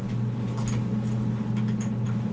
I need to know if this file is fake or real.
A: real